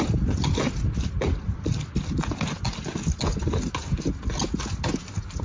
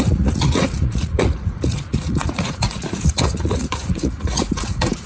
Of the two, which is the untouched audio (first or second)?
first